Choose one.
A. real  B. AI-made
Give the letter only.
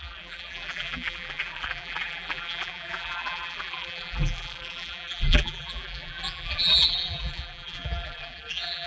B